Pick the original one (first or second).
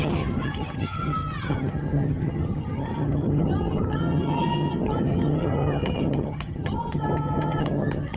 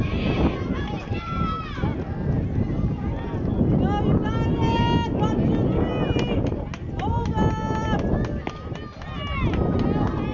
second